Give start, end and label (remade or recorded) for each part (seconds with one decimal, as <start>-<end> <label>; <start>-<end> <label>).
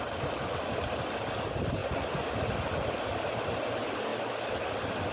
0.0-5.1 recorded